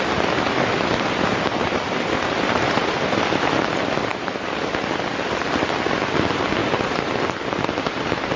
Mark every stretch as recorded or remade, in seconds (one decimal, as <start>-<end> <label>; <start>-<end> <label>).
0.0-1.6 recorded; 1.6-3.2 remade; 3.2-4.1 recorded; 4.1-4.8 remade; 4.8-6.6 recorded; 6.6-7.2 remade; 7.2-8.4 recorded